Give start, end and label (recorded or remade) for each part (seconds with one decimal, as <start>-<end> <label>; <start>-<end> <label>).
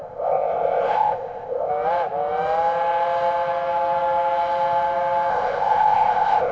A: 0.0-1.7 remade; 1.7-5.3 recorded; 5.3-6.5 remade